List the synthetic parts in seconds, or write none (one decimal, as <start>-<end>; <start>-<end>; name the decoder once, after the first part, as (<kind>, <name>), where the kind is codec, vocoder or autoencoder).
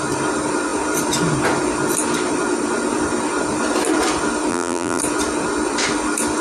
4.5-5.0 (vocoder, BigVGAN v2)